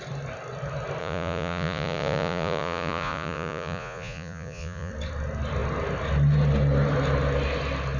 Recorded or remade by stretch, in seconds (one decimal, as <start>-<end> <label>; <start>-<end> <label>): 0.0-1.0 recorded; 1.0-4.9 remade; 4.9-8.0 recorded